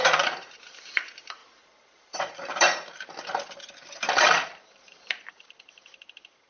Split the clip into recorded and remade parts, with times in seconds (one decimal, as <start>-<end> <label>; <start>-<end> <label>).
0.0-6.5 remade